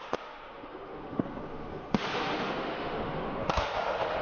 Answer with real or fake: fake